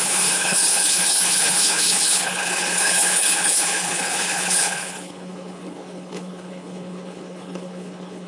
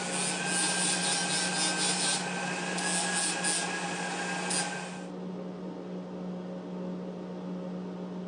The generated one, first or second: first